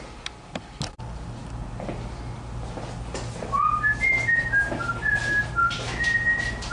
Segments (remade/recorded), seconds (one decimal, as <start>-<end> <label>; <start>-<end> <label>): 0.0-6.7 recorded